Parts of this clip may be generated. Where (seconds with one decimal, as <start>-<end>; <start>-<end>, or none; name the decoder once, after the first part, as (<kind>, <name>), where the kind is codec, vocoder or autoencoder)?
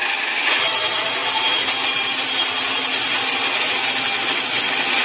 none